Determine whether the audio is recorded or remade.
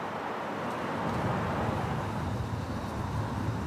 recorded